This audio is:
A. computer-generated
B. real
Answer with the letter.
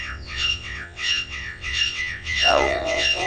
A